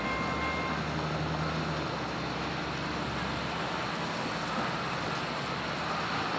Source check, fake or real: real